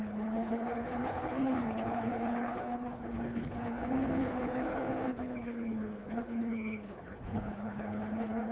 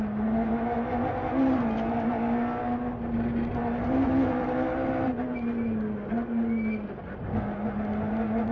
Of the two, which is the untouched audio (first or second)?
second